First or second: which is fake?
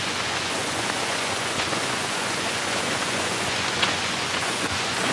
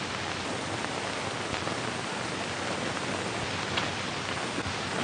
first